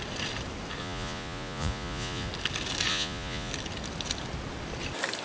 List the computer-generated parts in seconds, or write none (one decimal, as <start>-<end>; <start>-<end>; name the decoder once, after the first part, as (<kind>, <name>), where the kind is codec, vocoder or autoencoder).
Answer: 0.8-2.3 (vocoder, Vocos); 2.9-3.5